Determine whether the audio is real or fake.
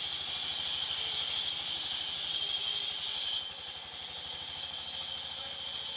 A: real